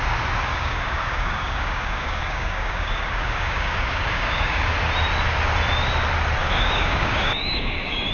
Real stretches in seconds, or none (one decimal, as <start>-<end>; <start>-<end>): 0.0-0.5; 4.7-6.4